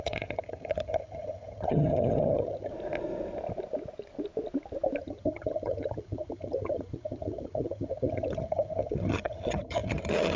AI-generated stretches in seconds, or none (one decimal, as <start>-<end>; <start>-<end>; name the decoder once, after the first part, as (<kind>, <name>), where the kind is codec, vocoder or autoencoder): 0.0-2.7 (vocoder, HiFi-GAN); 5.0-10.4